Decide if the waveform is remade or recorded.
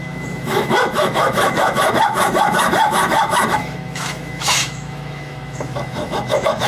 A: remade